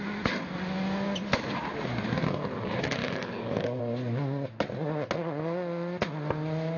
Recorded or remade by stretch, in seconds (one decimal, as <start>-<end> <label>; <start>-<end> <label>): 0.0-3.0 recorded; 3.0-3.8 remade; 3.8-6.8 recorded